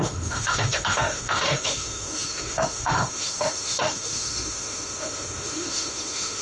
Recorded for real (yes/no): no